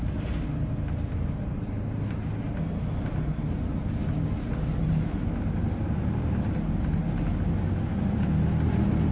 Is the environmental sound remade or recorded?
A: recorded